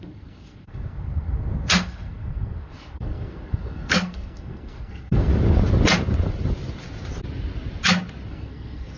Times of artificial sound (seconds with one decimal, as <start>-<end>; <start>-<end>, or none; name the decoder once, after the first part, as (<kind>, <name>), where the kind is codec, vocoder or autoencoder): 0.0-5.3 (codec, SNAC); 8.3-9.0